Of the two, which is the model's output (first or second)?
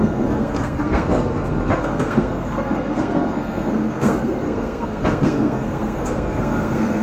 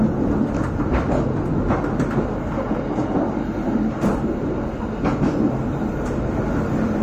first